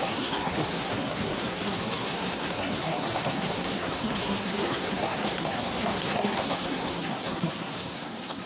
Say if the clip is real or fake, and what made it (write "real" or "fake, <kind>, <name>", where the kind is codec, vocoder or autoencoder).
fake, codec, SNAC